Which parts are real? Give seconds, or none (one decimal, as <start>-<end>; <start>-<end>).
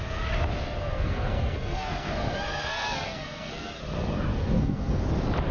0.0-0.8; 3.8-4.3; 5.0-5.5